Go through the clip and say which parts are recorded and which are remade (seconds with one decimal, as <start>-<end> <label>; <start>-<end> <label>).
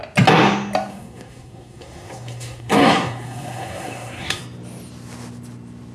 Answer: 0.0-0.9 recorded; 0.9-4.4 remade; 4.4-5.9 recorded